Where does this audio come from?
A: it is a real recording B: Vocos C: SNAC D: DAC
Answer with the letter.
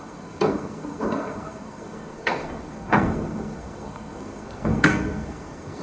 C